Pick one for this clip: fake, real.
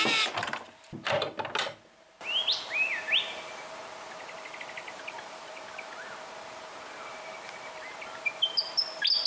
real